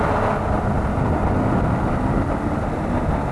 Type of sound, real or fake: real